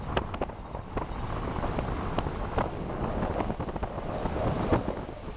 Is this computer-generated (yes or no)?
no